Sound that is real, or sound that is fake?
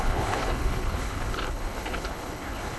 fake